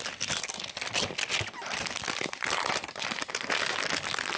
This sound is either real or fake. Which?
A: real